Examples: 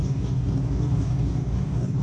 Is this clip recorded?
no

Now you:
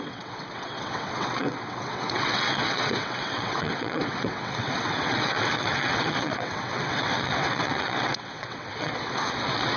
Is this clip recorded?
no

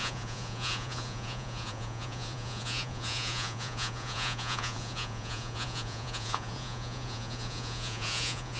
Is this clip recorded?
no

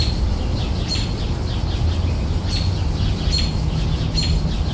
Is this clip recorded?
yes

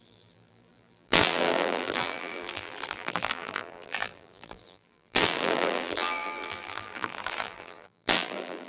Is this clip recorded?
no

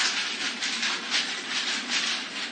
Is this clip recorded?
yes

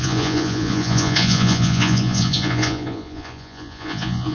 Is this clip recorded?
no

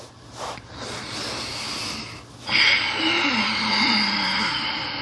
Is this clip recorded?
yes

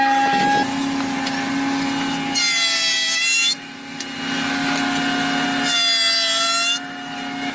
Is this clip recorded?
yes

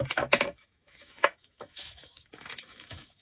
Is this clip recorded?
no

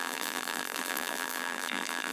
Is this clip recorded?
no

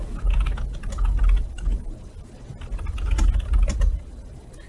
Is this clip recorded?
yes